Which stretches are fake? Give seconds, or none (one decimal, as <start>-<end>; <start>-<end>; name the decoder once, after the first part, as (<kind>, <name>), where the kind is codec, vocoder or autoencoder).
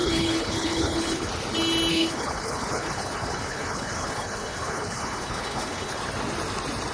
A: 0.0-1.3 (codec, HILCodec); 1.9-6.0